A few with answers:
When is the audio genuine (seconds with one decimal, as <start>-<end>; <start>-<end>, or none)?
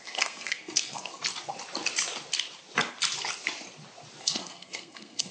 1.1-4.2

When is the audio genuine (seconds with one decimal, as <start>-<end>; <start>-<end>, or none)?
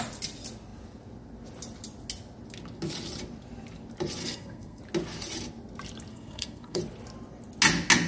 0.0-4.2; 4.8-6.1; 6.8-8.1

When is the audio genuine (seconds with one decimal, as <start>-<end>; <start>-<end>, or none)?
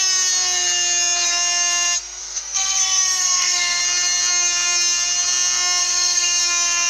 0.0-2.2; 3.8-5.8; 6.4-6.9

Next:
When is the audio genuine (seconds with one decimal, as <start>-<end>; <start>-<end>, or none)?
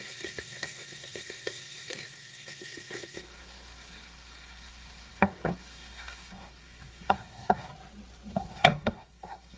7.7-8.3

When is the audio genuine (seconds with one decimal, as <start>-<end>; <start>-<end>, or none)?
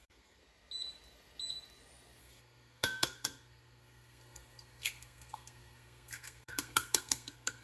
0.4-2.2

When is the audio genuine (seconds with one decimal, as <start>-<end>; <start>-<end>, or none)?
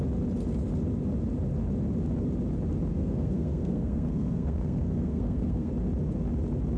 0.0-2.9; 5.7-6.8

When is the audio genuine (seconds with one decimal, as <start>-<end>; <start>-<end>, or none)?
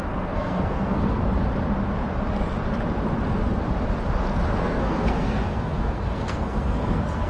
1.2-4.6